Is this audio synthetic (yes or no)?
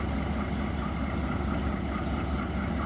no